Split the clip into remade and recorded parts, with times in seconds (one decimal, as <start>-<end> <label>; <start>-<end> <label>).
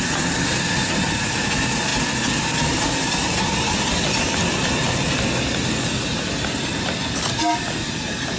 0.0-8.4 recorded